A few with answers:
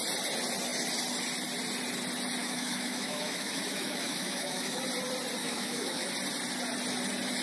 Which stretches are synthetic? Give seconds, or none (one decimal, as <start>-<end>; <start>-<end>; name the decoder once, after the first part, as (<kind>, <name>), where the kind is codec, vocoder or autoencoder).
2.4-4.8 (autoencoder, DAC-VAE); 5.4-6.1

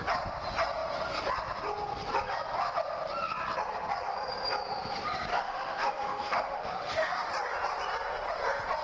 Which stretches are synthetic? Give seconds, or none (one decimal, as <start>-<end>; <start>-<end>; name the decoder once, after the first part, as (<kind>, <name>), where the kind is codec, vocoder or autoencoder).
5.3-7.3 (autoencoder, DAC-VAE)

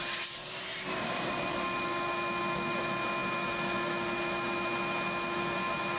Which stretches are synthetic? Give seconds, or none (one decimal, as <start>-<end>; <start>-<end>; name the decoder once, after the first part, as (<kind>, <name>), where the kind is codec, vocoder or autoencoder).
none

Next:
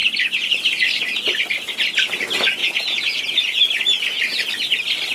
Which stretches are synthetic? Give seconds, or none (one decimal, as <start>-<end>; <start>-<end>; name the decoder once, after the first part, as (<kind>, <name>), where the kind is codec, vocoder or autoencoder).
2.6-3.2 (vocoder, Vocos)

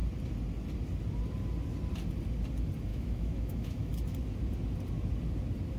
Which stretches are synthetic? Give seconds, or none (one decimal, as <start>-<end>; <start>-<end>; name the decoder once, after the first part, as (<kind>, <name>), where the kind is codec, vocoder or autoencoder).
2.9-3.9 (autoencoder, DAC-VAE)